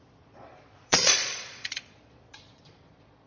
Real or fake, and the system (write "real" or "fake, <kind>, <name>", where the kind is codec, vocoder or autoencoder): fake, vocoder, Vocos